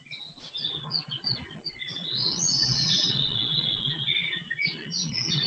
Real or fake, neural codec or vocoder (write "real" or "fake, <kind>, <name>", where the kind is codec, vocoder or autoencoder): fake, vocoder, Vocos